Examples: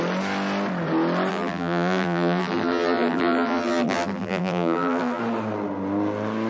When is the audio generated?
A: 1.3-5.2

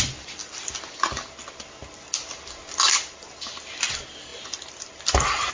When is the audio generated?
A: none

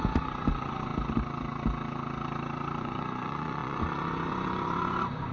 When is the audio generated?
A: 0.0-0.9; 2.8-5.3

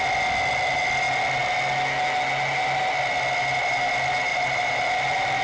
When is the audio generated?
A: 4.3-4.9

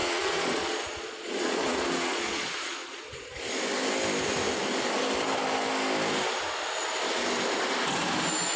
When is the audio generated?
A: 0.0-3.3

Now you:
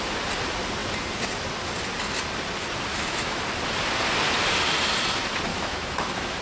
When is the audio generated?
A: 2.9-3.4; 5.5-6.4

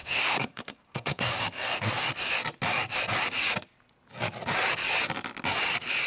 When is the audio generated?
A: 0.0-1.3

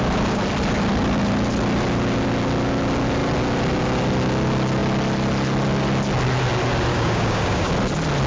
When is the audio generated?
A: 6.9-7.7